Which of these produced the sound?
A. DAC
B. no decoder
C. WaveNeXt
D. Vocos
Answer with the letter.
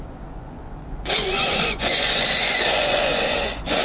D